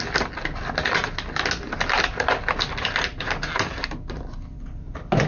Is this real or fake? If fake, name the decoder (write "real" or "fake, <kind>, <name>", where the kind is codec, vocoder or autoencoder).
real